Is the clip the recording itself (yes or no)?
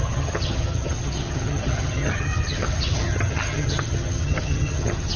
no